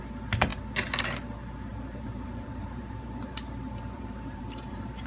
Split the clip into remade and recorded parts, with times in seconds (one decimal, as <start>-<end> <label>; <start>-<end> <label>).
0.0-1.7 recorded; 1.7-5.1 remade